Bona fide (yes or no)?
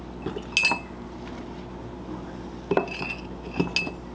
yes